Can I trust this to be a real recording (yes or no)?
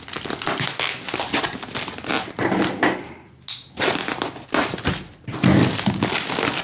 yes